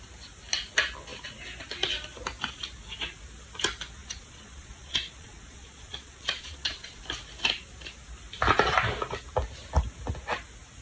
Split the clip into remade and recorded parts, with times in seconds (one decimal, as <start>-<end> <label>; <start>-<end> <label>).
0.0-4.0 recorded; 4.0-7.0 remade; 7.0-10.8 recorded